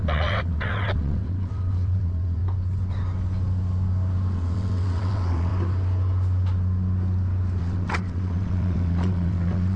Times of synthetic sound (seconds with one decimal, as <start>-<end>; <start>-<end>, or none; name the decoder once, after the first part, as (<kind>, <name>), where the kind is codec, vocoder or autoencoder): 0.0-2.4 (vocoder, WaveNeXt); 4.3-5.5; 7.6-9.8